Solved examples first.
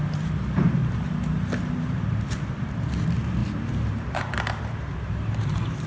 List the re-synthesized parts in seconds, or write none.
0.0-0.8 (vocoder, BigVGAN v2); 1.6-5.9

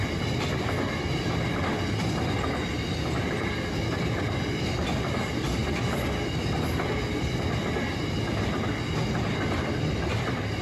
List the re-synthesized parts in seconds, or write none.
none

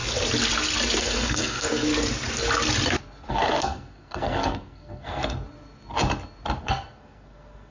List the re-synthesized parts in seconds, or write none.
1.0-1.9 (codec, SNAC); 3.3-5.2; 6.6-7.7

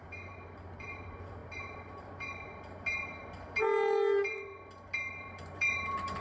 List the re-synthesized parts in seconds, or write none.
0.0-3.2 (vocoder, BigVGAN v2); 5.1-6.2

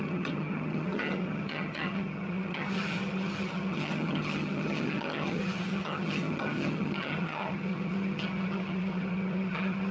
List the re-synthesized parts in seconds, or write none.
0.0-9.9 (vocoder, HiFi-GAN)

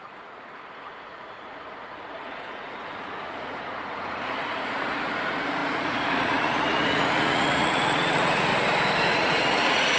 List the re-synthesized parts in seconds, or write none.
0.0-8.5 (vocoder, Vocos); 9.1-10.0